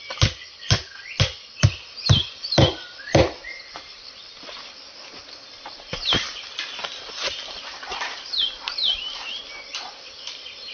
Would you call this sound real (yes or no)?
yes